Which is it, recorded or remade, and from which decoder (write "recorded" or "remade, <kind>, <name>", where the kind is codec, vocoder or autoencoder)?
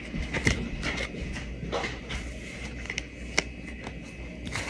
recorded